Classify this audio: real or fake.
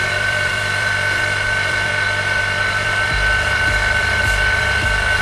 fake